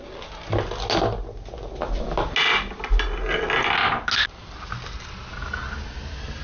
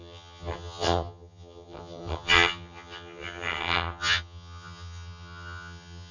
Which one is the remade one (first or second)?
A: second